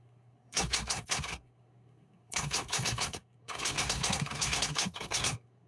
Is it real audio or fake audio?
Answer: fake